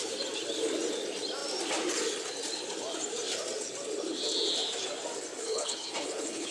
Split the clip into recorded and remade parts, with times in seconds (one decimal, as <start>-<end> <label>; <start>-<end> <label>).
0.0-5.4 recorded; 5.4-6.5 remade